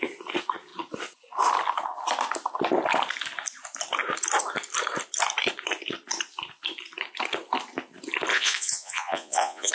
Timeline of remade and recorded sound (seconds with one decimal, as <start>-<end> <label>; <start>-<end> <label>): 0.0-8.3 recorded; 8.3-9.7 remade